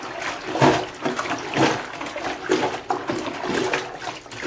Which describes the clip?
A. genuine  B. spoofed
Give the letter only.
A